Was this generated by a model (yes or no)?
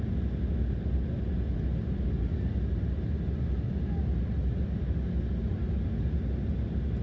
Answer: no